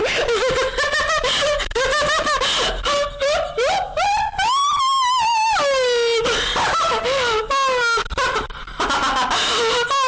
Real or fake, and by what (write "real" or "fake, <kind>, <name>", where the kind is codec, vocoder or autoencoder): real